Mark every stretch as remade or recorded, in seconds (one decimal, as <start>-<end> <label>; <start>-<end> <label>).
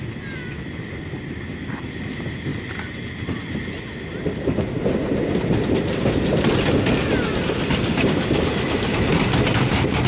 0.0-10.1 recorded